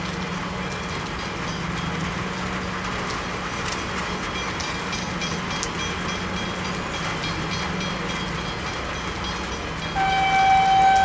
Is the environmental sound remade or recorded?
recorded